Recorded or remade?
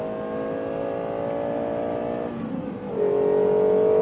recorded